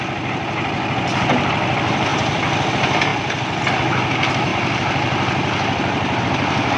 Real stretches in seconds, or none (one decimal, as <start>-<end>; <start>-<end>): 0.0-2.1; 2.7-4.5; 6.2-6.8